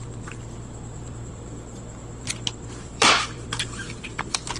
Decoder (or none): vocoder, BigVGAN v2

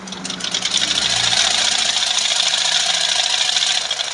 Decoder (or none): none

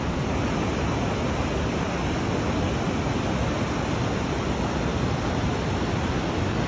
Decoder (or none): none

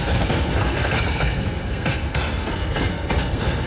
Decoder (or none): codec, SNAC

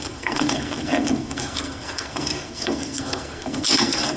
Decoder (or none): codec, SNAC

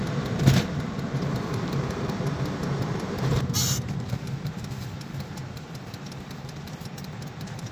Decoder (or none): vocoder, BigVGAN v2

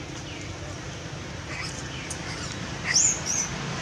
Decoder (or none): none